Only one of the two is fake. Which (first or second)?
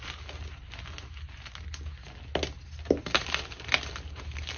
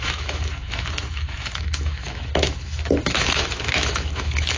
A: second